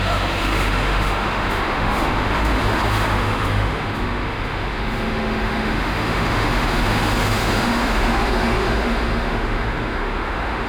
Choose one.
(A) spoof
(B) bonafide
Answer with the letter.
A